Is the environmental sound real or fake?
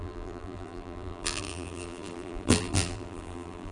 fake